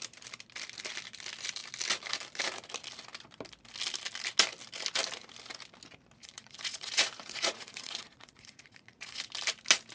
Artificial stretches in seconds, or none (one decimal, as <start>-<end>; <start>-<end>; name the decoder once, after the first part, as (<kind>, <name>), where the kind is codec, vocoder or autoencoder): 6.2-9.2 (vocoder, Vocos)